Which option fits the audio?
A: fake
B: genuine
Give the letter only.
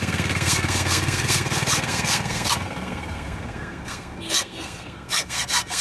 A